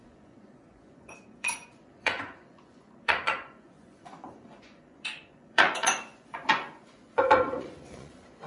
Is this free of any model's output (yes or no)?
no